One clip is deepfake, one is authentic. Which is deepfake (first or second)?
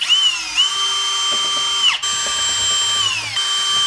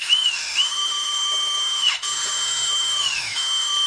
second